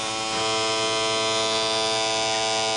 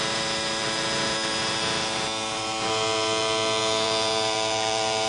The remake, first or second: second